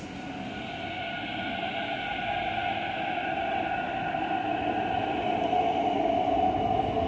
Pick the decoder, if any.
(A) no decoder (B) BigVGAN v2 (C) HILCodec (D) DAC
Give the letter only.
A